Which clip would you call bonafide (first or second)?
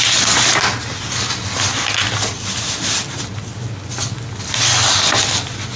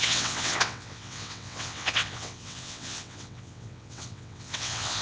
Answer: first